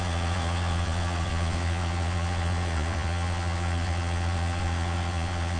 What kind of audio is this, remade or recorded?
remade